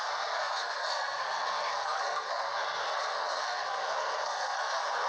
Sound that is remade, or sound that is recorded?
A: remade